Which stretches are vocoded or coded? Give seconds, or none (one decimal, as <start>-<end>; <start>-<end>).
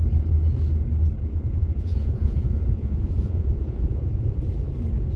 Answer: 1.3-4.4